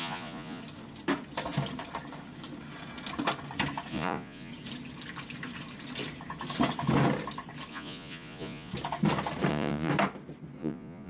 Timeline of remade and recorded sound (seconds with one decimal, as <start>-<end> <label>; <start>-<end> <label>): 0.0-0.6 remade; 0.6-3.9 recorded; 3.9-4.5 remade; 4.5-7.7 recorded; 7.7-8.7 remade; 8.7-9.5 recorded; 9.5-9.9 remade; 9.9-10.6 recorded; 10.6-11.1 remade